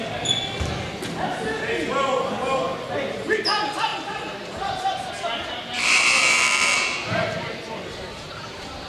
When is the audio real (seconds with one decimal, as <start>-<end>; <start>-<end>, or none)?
0.0-3.9; 5.1-6.2

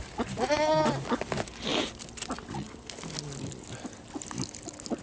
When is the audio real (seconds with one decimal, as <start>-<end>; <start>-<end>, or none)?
0.0-5.0